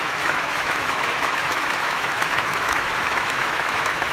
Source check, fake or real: fake